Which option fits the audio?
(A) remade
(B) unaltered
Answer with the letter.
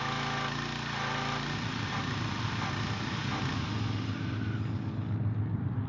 B